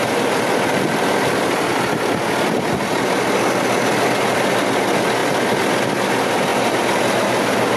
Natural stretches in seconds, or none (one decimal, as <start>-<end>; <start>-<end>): 0.0-7.8